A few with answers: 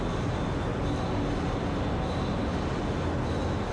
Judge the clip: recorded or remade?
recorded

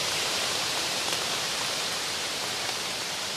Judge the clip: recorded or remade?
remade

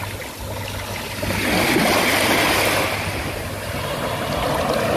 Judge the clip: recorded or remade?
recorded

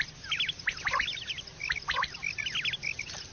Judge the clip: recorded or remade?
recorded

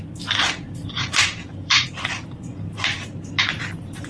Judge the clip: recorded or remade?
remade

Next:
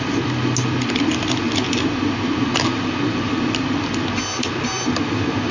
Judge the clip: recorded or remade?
recorded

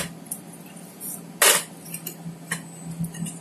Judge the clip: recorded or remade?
recorded